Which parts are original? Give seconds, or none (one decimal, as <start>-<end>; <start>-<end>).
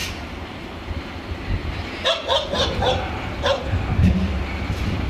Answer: 1.0-1.6; 2.1-5.1